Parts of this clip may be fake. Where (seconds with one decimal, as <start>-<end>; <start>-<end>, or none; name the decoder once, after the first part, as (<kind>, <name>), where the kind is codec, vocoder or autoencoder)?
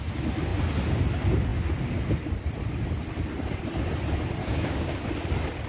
4.4-5.1 (codec, DAC)